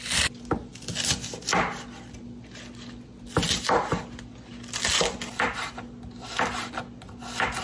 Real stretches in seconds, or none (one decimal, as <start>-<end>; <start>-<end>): 0.0-7.6